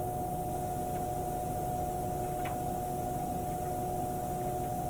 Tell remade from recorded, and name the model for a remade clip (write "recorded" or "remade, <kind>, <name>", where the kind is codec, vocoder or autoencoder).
recorded